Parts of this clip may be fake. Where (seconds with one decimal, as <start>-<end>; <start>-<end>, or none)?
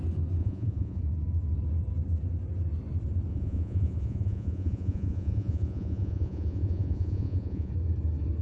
0.4-1.0; 3.3-7.7